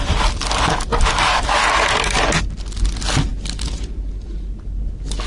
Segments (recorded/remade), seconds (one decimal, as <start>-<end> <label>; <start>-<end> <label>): 0.0-5.3 recorded

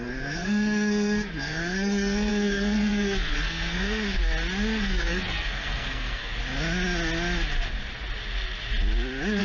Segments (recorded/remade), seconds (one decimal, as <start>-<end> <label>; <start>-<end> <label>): 0.0-4.2 remade; 4.2-4.8 recorded; 4.8-6.3 remade; 6.3-9.4 recorded

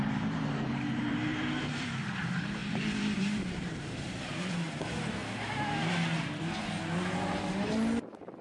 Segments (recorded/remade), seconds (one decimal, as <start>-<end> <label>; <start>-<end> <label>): 0.0-5.2 remade; 5.2-5.9 recorded; 5.9-8.4 remade

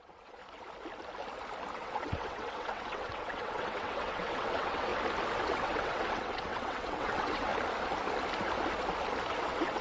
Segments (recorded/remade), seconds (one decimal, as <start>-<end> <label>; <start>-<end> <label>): 0.0-0.4 remade; 0.4-1.7 recorded; 1.7-4.9 remade; 4.9-5.4 recorded; 5.4-7.5 remade; 7.5-9.4 recorded; 9.4-9.8 remade

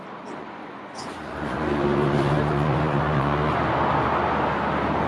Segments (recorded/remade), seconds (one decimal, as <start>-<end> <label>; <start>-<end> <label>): 0.0-0.4 recorded; 0.4-3.5 remade; 3.5-5.1 recorded

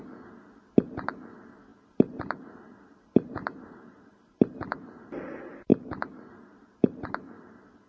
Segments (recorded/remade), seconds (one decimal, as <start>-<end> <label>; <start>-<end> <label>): 0.0-1.7 recorded; 1.7-5.1 remade; 5.1-5.7 recorded; 5.7-7.9 remade

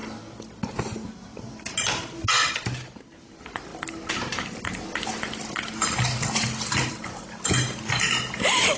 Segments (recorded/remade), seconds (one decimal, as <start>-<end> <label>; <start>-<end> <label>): 0.0-8.8 recorded

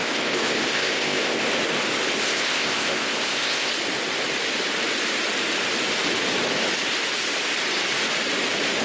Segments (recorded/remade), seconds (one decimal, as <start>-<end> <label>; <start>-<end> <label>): 0.0-1.5 remade; 1.5-2.2 recorded; 2.2-3.7 remade; 3.7-8.8 recorded